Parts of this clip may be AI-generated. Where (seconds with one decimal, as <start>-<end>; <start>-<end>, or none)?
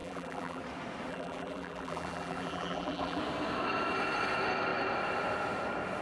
0.0-0.6; 1.1-3.2